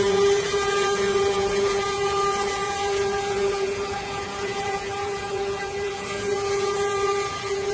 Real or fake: fake